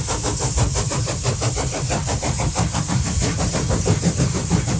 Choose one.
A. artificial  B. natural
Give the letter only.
A